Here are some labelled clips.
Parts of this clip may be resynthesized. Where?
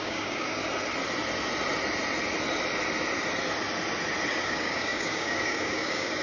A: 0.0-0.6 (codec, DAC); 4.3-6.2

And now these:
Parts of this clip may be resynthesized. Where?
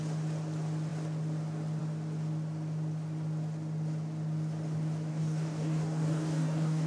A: 5.1-6.9 (codec, DAC)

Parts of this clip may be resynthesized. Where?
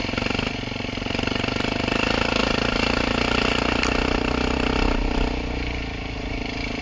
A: none